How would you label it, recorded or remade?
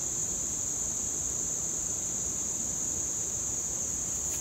recorded